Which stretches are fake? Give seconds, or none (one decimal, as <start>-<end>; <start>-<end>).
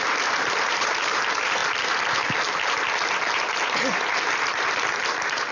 0.0-1.6; 3.5-5.5